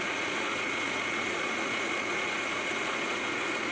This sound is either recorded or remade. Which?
remade